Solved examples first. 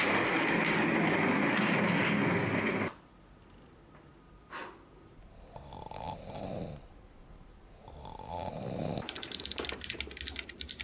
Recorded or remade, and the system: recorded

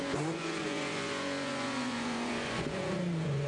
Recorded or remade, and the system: remade, vocoder, Vocos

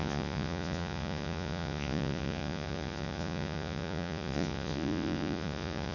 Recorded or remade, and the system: remade, vocoder, Vocos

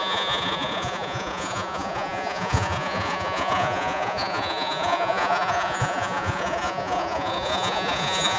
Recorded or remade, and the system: remade, vocoder, Vocos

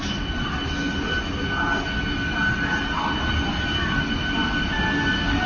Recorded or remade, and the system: recorded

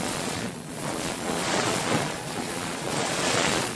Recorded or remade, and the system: remade, vocoder, Vocos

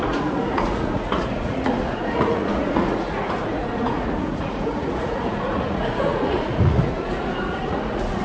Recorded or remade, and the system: remade, vocoder, Vocos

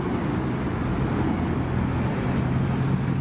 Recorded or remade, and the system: recorded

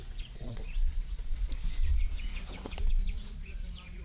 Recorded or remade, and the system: remade, vocoder, Vocos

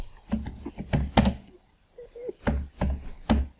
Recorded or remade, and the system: recorded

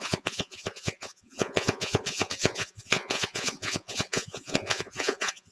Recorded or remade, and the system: remade, vocoder, Vocos